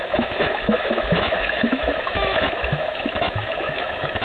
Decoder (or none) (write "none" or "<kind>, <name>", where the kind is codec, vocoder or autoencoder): autoencoder, DAC-VAE